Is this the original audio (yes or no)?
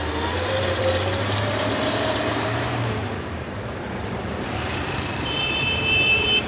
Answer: no